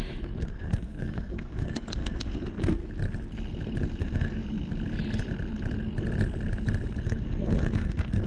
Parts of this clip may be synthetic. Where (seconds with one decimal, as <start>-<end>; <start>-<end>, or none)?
0.0-2.8; 4.0-4.4; 7.0-8.3